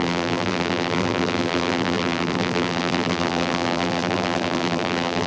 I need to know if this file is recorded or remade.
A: remade